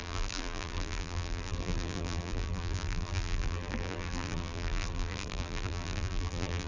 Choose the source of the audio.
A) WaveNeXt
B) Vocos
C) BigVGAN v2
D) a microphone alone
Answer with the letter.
C